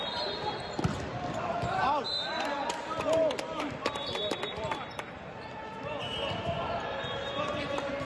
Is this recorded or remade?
remade